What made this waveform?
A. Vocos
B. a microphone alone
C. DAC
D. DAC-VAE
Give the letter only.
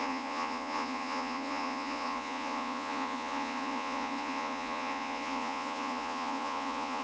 A